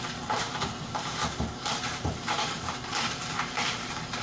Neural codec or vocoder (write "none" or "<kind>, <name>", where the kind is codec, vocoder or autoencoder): vocoder, BigVGAN v2